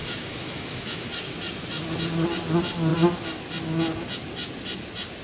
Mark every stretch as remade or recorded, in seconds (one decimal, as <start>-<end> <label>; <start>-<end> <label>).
0.0-1.1 remade; 1.1-5.2 recorded